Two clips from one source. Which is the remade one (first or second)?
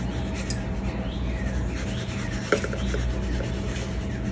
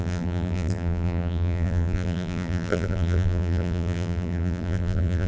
second